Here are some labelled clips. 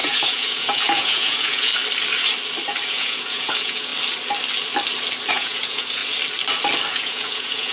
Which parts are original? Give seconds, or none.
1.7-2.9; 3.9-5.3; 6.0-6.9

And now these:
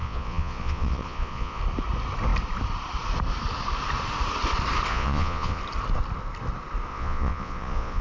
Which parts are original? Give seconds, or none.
1.6-4.9; 5.6-6.9

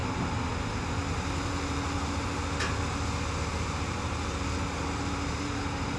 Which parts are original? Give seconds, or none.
0.0-6.0

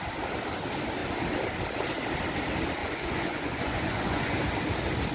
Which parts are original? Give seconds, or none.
0.0-2.8; 4.4-5.1

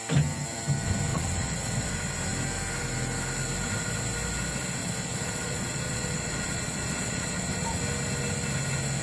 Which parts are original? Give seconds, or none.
0.0-1.1; 1.9-4.8; 7.8-9.0

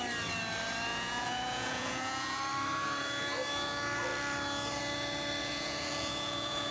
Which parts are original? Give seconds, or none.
0.0-0.9; 2.4-5.4

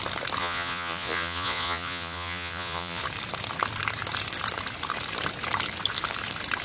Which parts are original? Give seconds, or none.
0.0-0.4; 3.0-6.6

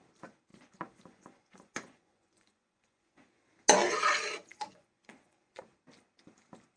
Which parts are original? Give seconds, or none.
0.0-0.5; 3.4-4.5; 5.6-6.8